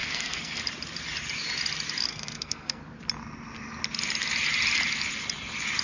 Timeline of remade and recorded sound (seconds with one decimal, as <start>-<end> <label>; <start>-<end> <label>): 0.0-0.6 remade; 0.6-2.1 recorded; 2.1-2.8 remade; 2.8-5.8 recorded